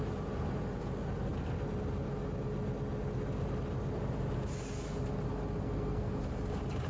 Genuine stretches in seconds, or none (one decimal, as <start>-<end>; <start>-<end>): 0.0-5.6; 6.1-6.9